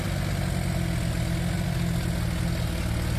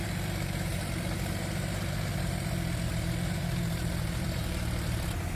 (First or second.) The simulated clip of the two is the second